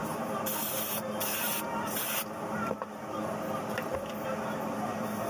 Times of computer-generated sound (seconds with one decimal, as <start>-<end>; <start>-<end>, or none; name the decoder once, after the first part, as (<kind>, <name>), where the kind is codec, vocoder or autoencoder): none